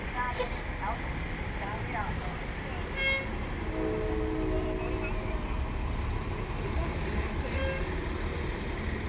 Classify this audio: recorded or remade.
recorded